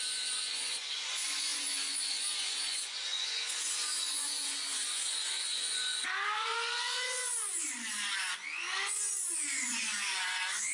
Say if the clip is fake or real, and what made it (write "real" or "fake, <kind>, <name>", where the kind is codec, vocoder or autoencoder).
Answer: fake, vocoder, Vocos